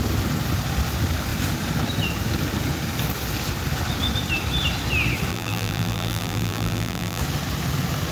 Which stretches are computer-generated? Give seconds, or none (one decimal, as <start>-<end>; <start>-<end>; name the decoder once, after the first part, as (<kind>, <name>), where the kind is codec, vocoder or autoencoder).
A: 5.3-7.2 (vocoder, BigVGAN v2)

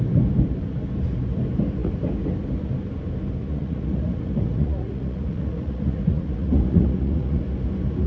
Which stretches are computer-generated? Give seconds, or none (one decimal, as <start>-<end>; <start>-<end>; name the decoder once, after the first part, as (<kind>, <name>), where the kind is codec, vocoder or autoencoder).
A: 3.4-7.4 (vocoder, Vocos)

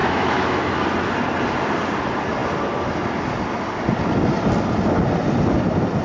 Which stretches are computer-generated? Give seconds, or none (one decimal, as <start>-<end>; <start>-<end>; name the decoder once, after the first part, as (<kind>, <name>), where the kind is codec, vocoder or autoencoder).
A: 0.0-0.6 (autoencoder, DAC-VAE)

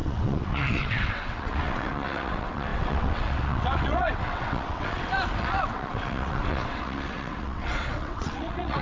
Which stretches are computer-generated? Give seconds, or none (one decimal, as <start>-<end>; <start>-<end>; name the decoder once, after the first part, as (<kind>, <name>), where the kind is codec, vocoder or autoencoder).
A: 0.0-8.8 (vocoder, WaveNeXt)

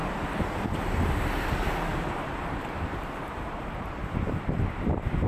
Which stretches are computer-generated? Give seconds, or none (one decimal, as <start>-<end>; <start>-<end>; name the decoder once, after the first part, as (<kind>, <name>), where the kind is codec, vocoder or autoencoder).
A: 1.9-5.3 (vocoder, BigVGAN v2)

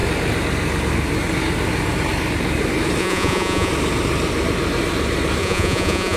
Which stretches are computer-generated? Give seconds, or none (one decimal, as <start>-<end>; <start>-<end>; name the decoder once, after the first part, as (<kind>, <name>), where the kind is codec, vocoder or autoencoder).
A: 3.0-3.7 (vocoder, Vocos); 5.4-6.2

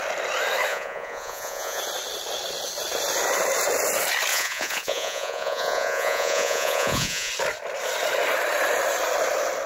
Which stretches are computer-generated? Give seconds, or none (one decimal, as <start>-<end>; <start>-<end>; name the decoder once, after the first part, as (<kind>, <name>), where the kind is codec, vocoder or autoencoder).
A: 0.7-1.8 (vocoder, Vocos); 4.3-7.3

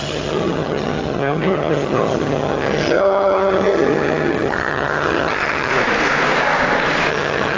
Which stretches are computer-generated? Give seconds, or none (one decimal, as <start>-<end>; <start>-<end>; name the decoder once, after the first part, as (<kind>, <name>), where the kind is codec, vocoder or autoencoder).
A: 0.0-5.7 (vocoder, HiFi-GAN); 7.1-7.6